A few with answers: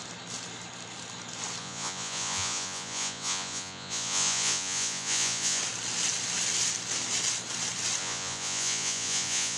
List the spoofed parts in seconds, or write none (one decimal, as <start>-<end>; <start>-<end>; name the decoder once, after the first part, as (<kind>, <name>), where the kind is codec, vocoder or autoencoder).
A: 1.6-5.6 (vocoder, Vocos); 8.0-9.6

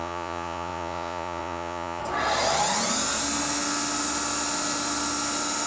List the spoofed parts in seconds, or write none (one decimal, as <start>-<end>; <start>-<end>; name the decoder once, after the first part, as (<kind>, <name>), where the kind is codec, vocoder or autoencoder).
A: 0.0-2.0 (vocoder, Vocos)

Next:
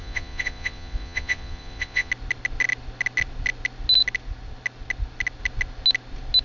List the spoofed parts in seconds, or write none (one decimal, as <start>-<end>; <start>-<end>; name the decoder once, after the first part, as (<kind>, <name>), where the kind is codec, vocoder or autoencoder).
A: 0.0-2.1 (vocoder, Vocos)